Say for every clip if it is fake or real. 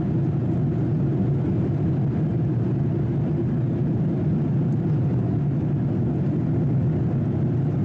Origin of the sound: real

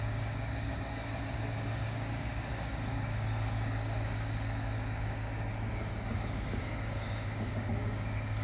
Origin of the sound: fake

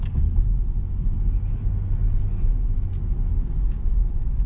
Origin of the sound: real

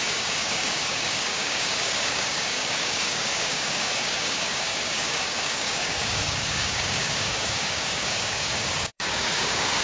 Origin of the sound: fake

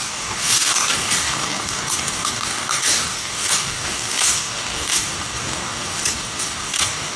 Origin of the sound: fake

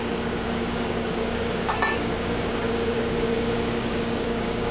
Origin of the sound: fake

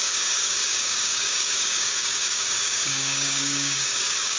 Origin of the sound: fake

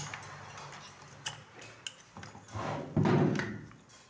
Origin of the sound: real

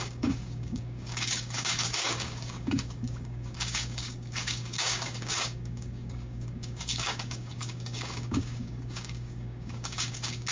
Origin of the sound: fake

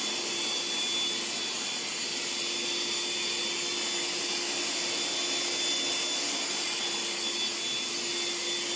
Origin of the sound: real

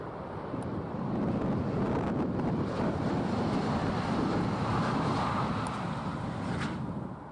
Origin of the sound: real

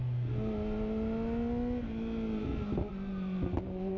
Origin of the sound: real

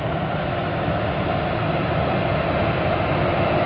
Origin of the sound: real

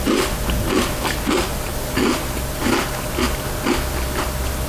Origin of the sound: real